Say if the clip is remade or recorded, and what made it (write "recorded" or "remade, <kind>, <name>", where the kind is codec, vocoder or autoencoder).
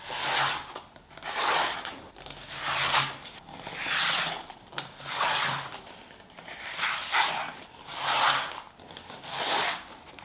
recorded